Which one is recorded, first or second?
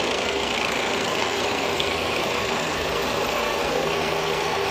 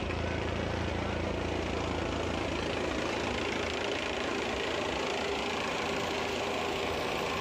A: second